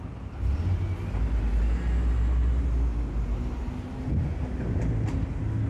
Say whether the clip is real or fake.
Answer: real